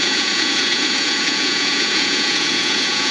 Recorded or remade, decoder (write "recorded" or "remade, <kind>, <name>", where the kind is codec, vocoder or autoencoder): remade, vocoder, Vocos